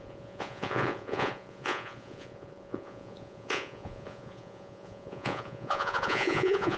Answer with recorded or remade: remade